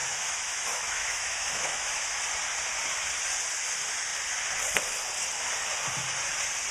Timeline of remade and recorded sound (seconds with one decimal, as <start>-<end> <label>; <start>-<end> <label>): 0.0-2.2 remade; 2.2-6.7 recorded